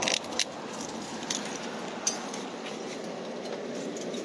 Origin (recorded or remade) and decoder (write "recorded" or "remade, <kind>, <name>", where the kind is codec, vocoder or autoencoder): recorded